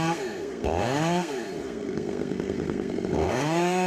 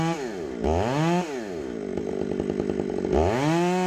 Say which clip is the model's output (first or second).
first